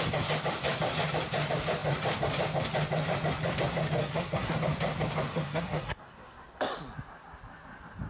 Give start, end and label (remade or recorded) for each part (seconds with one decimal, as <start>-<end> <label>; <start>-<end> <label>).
0.0-4.0 recorded; 4.0-4.6 remade; 4.6-5.3 recorded; 5.3-6.6 remade; 6.6-8.1 recorded